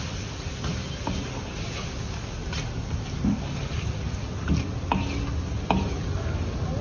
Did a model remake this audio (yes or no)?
no